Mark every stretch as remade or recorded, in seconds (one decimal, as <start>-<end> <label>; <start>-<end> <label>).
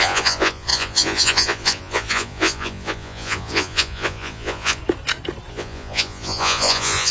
0.0-4.8 remade; 4.8-5.5 recorded; 5.5-7.1 remade